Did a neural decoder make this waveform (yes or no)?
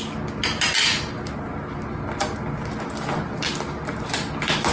no